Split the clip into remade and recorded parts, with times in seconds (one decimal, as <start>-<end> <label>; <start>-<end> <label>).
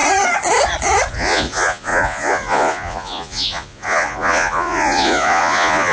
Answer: 0.0-1.1 recorded; 1.1-5.9 remade